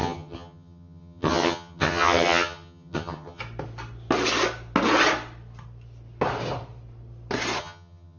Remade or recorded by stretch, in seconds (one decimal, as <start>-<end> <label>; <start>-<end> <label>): 0.0-3.4 remade; 3.4-7.6 recorded; 7.6-8.2 remade